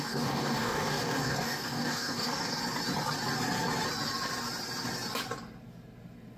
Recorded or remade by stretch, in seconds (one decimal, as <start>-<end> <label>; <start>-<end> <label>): 0.0-2.6 remade; 2.6-6.4 recorded